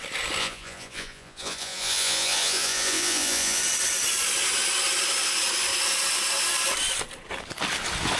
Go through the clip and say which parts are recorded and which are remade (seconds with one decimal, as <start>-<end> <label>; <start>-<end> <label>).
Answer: 0.0-0.4 recorded; 0.4-3.6 remade; 3.6-8.2 recorded